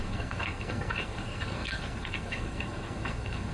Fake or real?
fake